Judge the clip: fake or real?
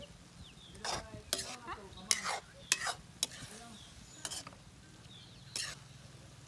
real